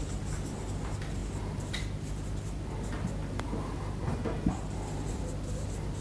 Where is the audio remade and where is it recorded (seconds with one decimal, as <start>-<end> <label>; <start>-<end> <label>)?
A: 0.0-6.0 recorded